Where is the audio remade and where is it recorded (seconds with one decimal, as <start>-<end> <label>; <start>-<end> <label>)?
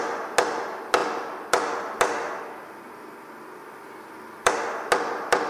0.0-3.6 recorded; 3.6-4.5 remade; 4.5-5.5 recorded